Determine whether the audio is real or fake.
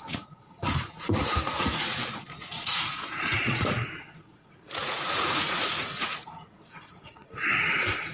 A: fake